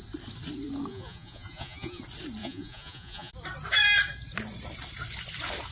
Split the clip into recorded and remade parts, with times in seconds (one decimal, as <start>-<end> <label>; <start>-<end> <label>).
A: 0.0-0.9 recorded; 0.9-2.0 remade; 2.0-2.4 recorded; 2.4-3.3 remade; 3.3-5.7 recorded